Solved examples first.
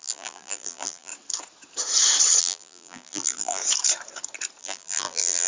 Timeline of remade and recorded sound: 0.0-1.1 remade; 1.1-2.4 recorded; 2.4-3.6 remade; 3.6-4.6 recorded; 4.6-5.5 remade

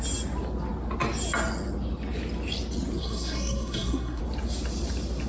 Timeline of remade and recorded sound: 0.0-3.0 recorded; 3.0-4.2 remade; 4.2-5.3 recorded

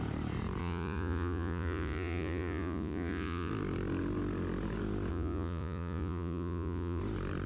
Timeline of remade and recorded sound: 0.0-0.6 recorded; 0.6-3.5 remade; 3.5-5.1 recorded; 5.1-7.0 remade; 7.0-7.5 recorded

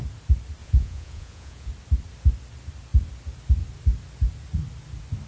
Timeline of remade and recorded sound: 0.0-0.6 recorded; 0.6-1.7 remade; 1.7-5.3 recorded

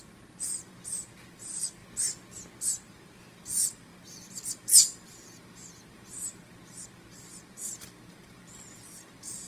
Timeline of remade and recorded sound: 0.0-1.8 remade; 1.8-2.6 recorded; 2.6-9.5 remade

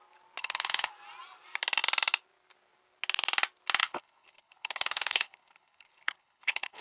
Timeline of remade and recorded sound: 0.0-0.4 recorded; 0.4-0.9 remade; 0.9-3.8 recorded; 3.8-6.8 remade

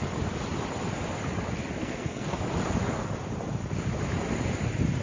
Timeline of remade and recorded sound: 0.0-1.8 recorded; 1.8-2.4 remade; 2.4-5.0 recorded